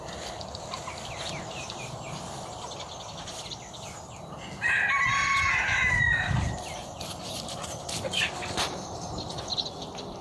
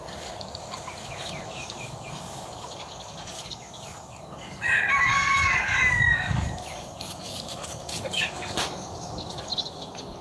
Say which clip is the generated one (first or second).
second